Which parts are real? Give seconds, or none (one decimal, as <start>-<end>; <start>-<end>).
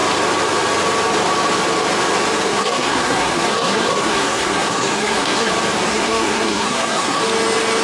0.0-2.5; 5.5-5.9; 7.2-7.8